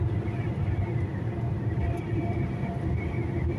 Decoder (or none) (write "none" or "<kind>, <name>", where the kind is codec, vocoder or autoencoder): none